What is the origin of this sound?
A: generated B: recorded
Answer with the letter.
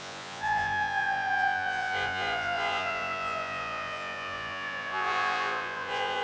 A